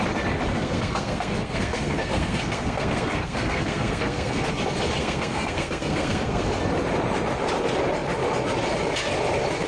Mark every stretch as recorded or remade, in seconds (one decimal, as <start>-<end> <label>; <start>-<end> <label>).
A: 0.0-0.5 recorded; 0.5-4.5 remade; 4.5-5.0 recorded; 5.0-6.5 remade; 6.5-9.7 recorded

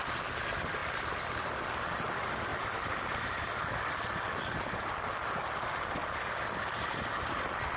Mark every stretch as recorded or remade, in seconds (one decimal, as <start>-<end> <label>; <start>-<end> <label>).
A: 0.0-0.8 remade; 0.8-1.8 recorded; 1.8-2.5 remade; 2.5-3.1 recorded; 3.1-7.8 remade

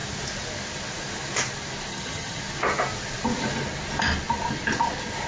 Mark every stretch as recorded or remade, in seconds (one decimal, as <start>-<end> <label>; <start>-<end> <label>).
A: 0.0-1.9 recorded; 1.9-2.4 remade; 2.4-5.3 recorded

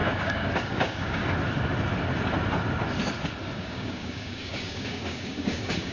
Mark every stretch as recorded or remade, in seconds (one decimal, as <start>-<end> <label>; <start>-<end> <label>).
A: 0.0-1.2 remade; 1.2-3.6 recorded; 3.6-5.9 remade

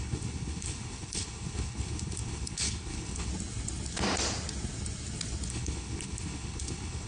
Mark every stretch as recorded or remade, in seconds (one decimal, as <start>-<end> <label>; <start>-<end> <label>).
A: 0.0-3.3 remade; 3.3-5.5 recorded; 5.5-7.1 remade